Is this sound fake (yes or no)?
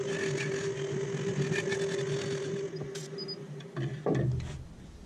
no